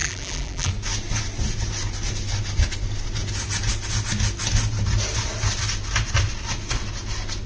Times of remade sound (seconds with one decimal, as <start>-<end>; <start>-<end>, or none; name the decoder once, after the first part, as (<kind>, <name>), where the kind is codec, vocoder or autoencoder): 0.0-0.7 (vocoder, BigVGAN v2)

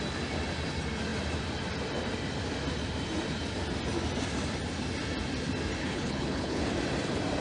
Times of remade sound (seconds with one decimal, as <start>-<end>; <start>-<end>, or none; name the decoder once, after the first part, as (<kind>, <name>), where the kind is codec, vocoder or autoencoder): 5.8-6.6 (codec, HILCodec)